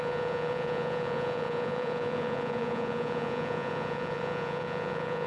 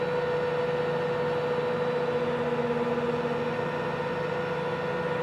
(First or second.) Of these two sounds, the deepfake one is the first